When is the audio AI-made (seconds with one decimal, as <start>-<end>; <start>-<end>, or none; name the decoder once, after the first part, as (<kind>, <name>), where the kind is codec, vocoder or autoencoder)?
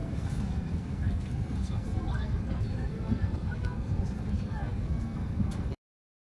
0.0-6.3 (codec, SNAC)